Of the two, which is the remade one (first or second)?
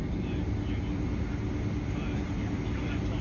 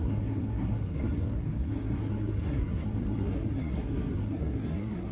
second